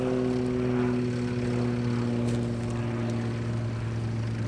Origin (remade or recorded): recorded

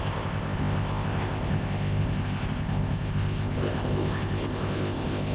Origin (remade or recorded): remade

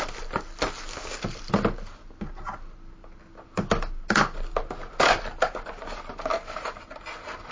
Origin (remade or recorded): recorded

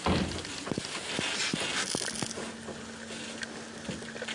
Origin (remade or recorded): recorded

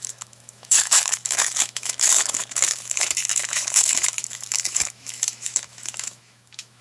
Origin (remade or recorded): remade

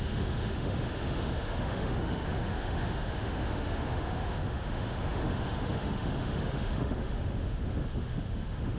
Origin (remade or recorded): remade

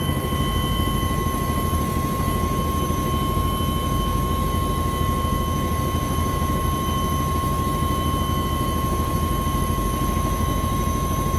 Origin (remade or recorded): remade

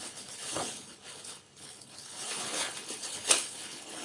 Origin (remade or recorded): remade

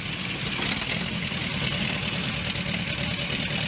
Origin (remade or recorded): recorded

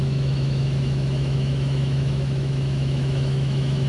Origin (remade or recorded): remade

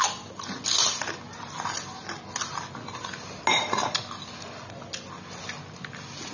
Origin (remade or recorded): recorded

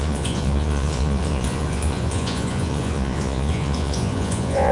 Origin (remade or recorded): remade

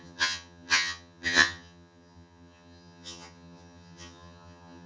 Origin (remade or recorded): remade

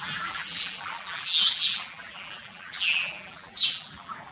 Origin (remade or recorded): remade